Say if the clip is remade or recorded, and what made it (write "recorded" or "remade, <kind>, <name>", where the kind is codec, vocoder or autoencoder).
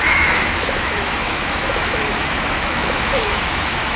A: remade, autoencoder, DAC-VAE